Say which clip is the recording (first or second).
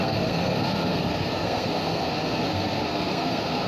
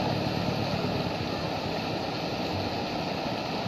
second